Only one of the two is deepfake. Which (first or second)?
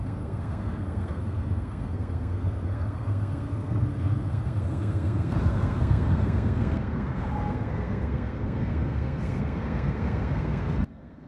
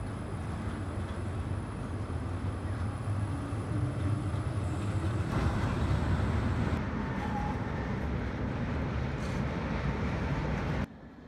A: first